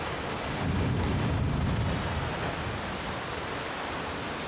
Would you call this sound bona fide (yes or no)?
yes